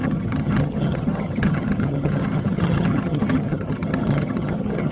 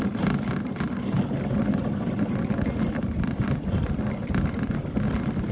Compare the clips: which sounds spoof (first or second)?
first